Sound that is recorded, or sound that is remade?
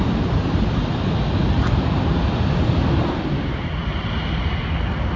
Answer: recorded